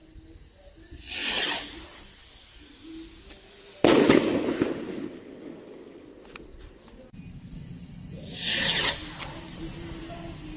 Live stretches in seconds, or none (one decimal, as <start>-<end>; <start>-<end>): 0.0-10.6